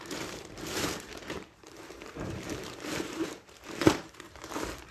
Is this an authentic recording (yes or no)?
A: no